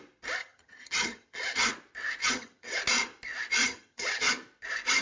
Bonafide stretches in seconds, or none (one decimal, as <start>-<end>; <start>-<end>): 0.0-0.4; 1.7-2.2; 2.8-3.6; 4.3-5.0